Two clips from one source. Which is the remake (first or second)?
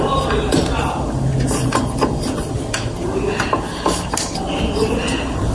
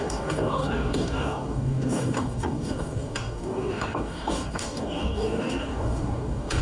second